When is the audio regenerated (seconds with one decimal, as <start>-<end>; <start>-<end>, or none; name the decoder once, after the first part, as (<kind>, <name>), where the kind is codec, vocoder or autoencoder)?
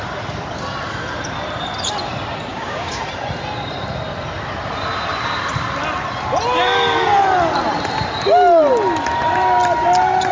2.5-3.0 (codec, DAC)